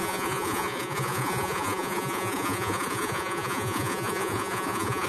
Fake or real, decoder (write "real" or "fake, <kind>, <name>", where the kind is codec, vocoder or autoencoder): fake, vocoder, Vocos